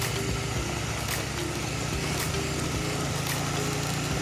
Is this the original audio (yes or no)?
yes